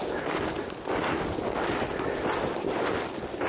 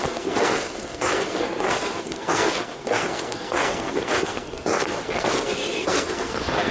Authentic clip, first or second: first